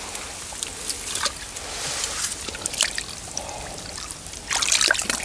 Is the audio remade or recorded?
recorded